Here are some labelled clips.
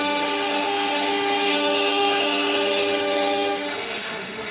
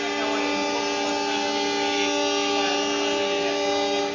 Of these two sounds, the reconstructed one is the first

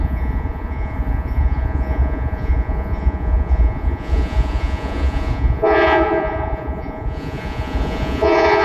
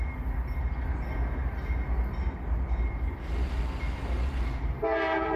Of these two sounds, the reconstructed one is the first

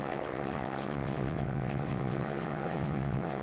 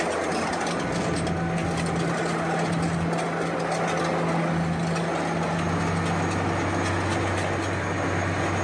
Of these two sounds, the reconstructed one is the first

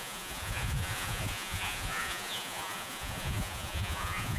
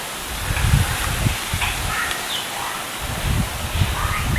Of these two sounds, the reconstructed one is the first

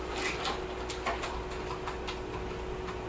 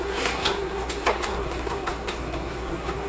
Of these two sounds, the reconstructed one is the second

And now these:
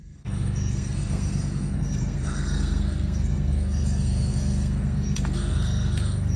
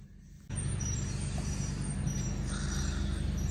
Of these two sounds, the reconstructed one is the first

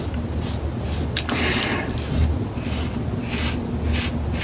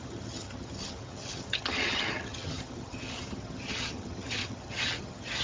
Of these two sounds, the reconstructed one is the second